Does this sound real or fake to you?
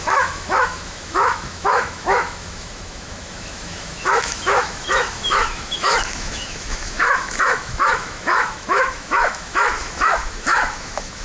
fake